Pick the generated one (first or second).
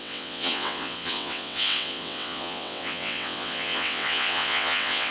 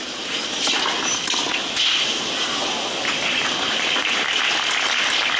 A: first